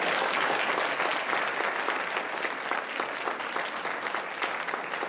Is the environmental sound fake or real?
real